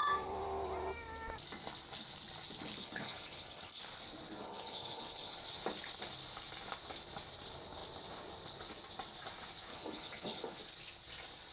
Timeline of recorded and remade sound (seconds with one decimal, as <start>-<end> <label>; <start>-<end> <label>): 0.0-2.8 recorded; 2.8-3.8 remade; 3.8-4.4 recorded; 4.4-5.4 remade; 5.4-9.7 recorded; 9.7-10.6 remade; 10.6-11.5 recorded

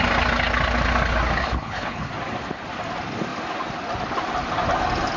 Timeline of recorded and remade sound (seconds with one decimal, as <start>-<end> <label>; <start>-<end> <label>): 0.0-1.4 recorded; 1.4-2.1 remade; 2.1-5.2 recorded